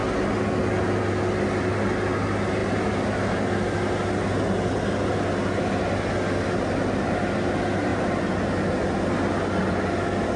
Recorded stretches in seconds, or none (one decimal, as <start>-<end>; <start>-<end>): 0.0-10.4

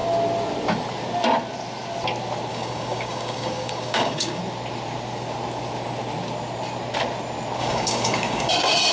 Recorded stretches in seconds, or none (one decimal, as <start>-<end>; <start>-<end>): 0.0-2.5; 4.4-7.6; 8.5-8.9

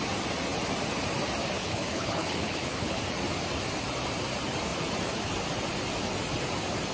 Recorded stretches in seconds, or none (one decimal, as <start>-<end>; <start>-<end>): 0.0-1.6; 3.0-6.9